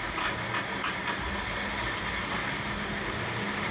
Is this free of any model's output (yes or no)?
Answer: yes